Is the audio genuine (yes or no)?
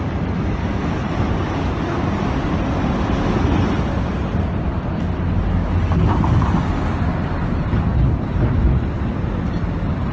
yes